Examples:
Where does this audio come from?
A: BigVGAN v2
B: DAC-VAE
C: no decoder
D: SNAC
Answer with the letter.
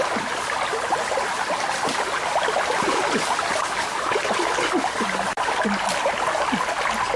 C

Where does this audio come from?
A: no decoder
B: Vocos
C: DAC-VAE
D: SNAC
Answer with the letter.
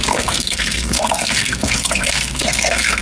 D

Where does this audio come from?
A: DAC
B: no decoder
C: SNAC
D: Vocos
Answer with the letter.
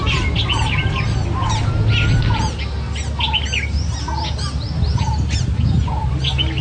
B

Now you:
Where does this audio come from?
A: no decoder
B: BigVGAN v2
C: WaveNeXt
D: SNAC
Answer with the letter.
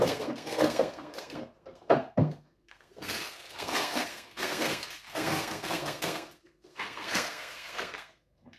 D